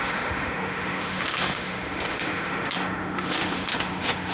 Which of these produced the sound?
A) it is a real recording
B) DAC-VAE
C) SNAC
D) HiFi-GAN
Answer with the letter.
B